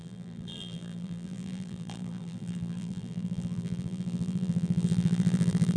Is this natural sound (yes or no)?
no